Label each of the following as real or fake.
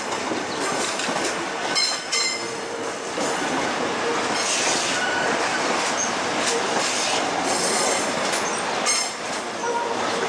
real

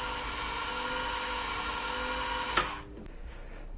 real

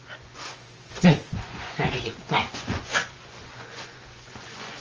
fake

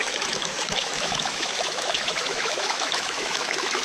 fake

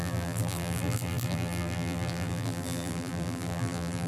fake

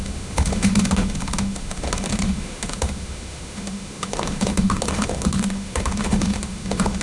fake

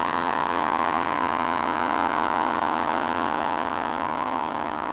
fake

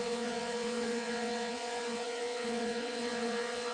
fake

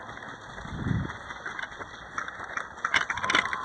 real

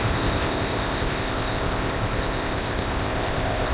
fake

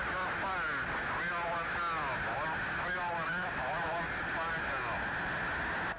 real